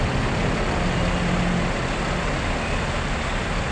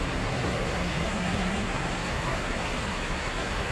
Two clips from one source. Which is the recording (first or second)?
first